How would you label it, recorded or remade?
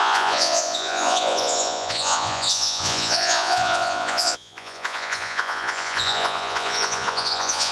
remade